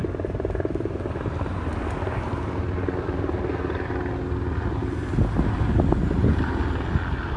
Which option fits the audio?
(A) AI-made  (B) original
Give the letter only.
B